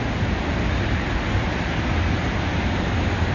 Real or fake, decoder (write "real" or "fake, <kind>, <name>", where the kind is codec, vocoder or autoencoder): real